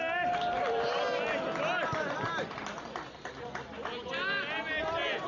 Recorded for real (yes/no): yes